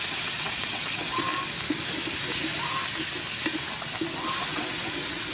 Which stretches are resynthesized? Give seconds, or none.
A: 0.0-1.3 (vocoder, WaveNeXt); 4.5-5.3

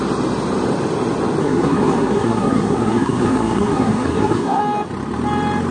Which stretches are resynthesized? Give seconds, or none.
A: 1.4-4.6 (codec, SNAC)

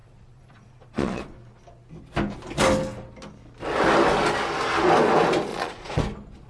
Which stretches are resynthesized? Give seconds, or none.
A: 0.0-1.2 (vocoder, Vocos); 5.5-6.0

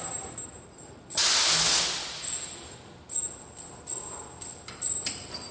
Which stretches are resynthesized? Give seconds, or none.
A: none

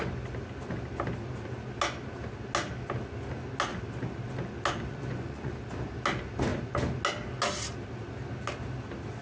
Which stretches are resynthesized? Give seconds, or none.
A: 4.9-5.5 (vocoder, Vocos)

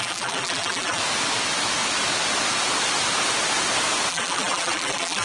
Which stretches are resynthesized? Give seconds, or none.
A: 0.0-1.0 (vocoder, BigVGAN v2); 4.1-5.2